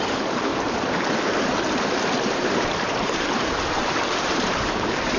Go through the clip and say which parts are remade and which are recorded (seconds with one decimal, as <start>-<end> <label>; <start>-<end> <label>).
0.0-0.5 remade; 0.5-2.3 recorded; 2.3-5.2 remade